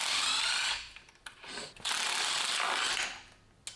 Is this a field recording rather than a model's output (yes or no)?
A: yes